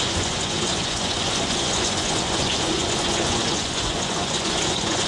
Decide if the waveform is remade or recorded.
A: remade